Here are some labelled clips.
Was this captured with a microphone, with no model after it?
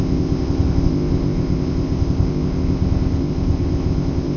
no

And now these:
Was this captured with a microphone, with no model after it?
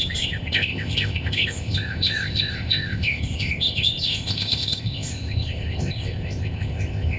no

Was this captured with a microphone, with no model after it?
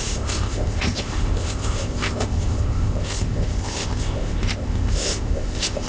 no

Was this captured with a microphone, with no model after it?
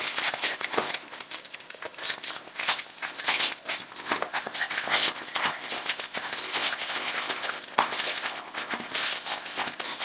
no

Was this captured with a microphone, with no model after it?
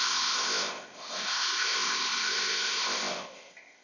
no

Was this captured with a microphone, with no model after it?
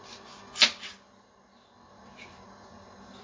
yes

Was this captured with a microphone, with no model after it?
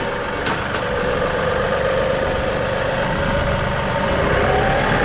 yes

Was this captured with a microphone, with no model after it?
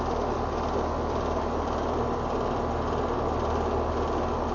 yes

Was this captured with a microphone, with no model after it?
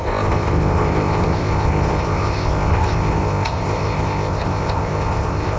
no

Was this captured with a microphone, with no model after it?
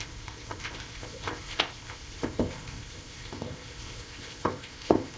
no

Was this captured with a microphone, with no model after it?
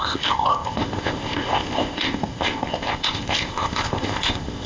no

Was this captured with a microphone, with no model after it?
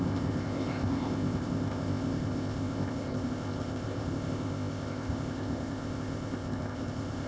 no